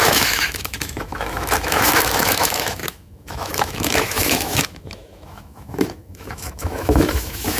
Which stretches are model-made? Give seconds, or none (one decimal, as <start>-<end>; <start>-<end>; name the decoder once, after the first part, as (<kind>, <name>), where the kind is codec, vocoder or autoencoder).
0.0-7.6 (autoencoder, DAC-VAE)